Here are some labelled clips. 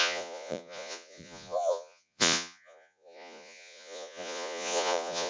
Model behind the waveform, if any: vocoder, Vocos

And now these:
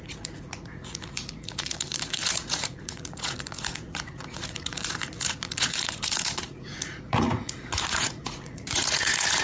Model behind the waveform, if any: vocoder, Vocos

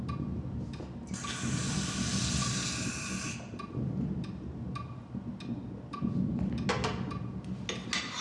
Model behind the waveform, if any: none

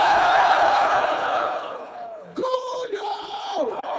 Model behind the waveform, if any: codec, HILCodec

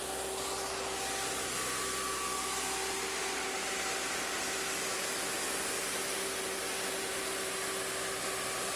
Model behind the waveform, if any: none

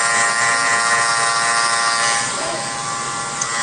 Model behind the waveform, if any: none